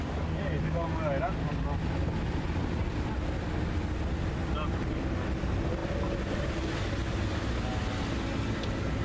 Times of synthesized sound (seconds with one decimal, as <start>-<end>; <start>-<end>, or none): none